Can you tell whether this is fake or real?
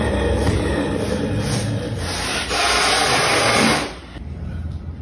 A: fake